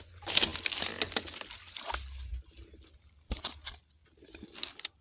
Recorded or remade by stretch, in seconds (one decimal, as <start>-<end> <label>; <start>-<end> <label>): 0.0-5.0 recorded